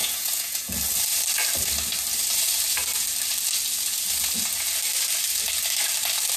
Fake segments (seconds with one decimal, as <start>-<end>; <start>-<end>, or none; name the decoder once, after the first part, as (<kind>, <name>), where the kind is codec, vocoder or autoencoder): 0.0-0.7 (vocoder, Vocos)

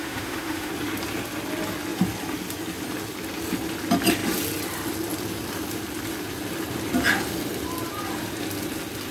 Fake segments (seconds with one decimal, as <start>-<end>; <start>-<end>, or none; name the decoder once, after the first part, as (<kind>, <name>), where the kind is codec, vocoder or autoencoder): 0.0-0.7 (autoencoder, DAC-VAE)

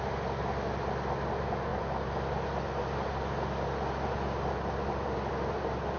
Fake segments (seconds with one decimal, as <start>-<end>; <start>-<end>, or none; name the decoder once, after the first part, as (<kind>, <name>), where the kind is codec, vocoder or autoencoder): none

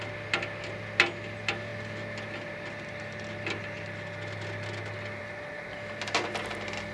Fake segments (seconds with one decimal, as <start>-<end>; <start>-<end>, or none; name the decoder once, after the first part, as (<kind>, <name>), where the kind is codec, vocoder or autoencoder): none

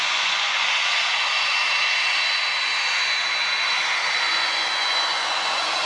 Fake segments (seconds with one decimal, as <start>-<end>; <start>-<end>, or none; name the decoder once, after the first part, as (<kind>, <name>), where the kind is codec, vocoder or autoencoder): 0.0-0.8 (vocoder, Vocos); 4.3-5.9

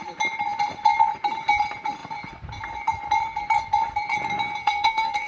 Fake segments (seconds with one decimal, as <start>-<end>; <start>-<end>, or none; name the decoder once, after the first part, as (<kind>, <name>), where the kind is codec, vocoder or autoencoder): 4.6-5.3 (codec, SNAC)

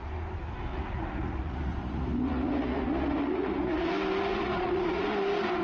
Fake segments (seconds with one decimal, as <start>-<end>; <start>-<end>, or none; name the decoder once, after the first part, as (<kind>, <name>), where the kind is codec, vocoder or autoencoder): 0.7-3.9 (vocoder, Vocos); 4.3-5.1